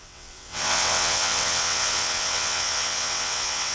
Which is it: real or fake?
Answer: fake